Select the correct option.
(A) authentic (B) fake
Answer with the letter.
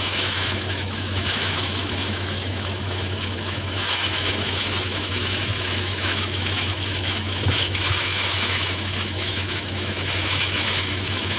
B